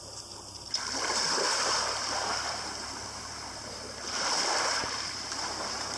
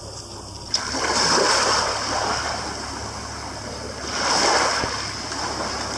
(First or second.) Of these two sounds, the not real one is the first